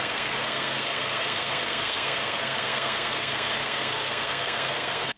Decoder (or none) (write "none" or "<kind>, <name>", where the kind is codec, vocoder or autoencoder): codec, SNAC